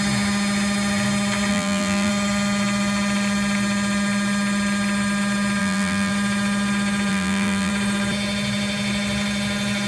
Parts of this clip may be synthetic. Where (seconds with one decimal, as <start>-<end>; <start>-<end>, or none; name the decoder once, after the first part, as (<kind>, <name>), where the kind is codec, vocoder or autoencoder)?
1.5-2.1 (vocoder, BigVGAN v2); 5.6-6.1; 7.1-7.7